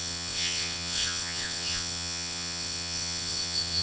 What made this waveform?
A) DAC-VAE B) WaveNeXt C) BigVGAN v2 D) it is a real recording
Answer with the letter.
B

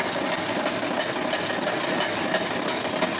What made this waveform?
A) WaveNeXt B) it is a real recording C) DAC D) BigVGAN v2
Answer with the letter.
B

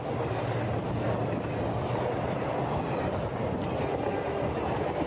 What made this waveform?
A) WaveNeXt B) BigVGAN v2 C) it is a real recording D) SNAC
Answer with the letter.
C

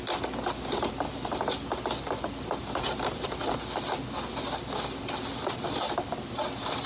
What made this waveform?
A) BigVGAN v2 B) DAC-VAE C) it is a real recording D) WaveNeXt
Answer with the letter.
C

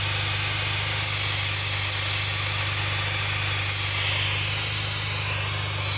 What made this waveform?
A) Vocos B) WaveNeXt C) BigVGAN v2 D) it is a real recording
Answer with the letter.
D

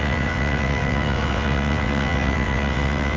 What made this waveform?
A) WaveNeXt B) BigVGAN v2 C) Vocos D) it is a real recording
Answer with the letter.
A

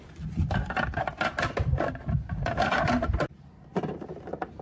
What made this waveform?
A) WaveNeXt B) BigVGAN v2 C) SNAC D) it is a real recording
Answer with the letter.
D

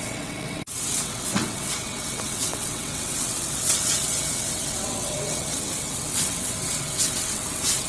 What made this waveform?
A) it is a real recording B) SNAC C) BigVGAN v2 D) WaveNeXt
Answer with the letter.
D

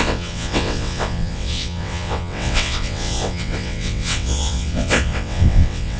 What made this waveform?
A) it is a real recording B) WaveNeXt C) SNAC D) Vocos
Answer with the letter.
B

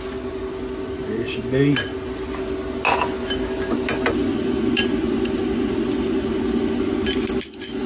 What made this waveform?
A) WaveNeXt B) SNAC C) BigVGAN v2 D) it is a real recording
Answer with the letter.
D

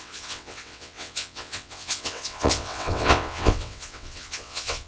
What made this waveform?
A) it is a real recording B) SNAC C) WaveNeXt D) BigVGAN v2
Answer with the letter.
C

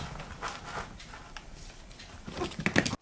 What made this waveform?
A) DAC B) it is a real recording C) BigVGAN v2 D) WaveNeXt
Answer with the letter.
B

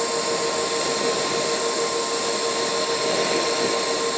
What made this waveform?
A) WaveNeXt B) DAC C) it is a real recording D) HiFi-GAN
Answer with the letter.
C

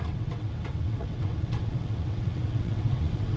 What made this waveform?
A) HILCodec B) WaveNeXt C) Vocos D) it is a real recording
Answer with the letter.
B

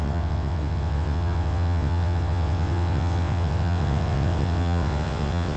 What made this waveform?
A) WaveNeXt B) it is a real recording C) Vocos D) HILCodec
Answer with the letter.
A